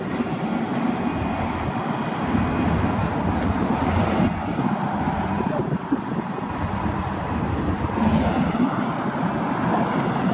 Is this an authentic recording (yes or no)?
yes